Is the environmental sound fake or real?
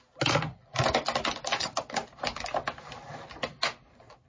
real